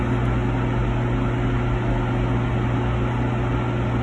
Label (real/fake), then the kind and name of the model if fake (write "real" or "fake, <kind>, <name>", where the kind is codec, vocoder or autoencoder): real